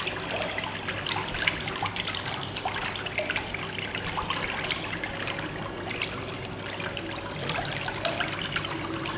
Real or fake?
real